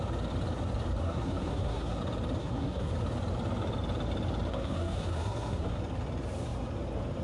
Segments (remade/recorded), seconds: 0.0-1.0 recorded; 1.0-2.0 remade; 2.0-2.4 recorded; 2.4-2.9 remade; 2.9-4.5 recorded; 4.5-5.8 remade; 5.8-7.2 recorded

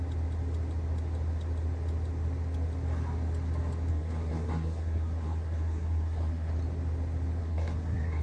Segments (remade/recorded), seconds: 0.0-3.9 recorded; 3.9-6.5 remade; 6.5-7.4 recorded; 7.4-8.2 remade

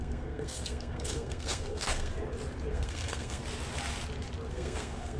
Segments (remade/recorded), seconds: 0.0-2.1 remade; 2.1-2.7 recorded; 2.7-3.4 remade; 3.4-4.5 recorded; 4.5-5.2 remade

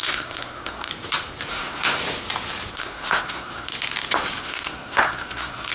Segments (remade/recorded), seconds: 0.0-0.9 remade; 0.9-1.5 recorded; 1.5-2.0 remade; 2.0-2.7 recorded; 2.7-3.7 remade; 3.7-4.4 recorded; 4.4-5.7 remade

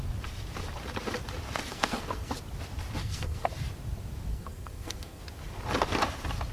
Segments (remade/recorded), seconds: 0.0-1.7 recorded; 1.7-2.3 remade; 2.3-3.0 recorded; 3.0-3.5 remade; 3.5-4.3 recorded; 4.3-5.2 remade; 5.2-6.5 recorded

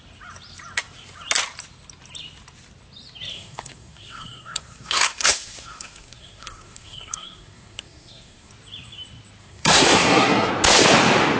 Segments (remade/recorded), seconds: 0.0-3.3 recorded; 3.3-8.5 remade; 8.5-9.4 recorded; 9.4-10.5 remade; 10.5-11.4 recorded

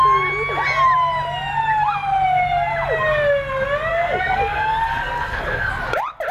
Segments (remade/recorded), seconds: 0.0-3.9 recorded; 3.9-5.7 remade; 5.7-6.3 recorded

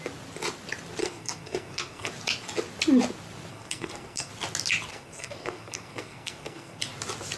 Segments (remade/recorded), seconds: 0.0-1.0 recorded; 1.0-2.1 remade; 2.1-3.5 recorded; 3.5-4.3 remade; 4.3-4.9 recorded; 4.9-6.8 remade; 6.8-7.4 recorded